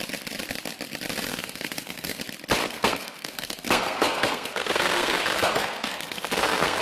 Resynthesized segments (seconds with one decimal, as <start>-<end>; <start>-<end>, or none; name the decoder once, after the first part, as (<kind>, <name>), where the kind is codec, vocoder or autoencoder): 1.3-2.2 (codec, SNAC); 2.6-6.8

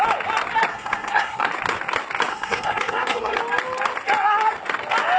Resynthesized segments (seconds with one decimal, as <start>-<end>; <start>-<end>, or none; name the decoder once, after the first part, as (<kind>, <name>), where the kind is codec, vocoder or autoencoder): 0.7-1.5 (codec, SNAC); 2.3-3.4